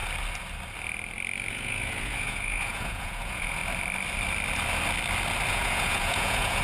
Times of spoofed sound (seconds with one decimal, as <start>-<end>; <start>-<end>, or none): 1.5-3.6; 5.5-6.6